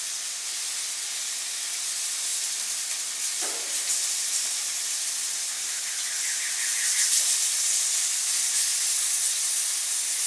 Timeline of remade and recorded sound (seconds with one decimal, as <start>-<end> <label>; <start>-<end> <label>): 0.0-10.3 recorded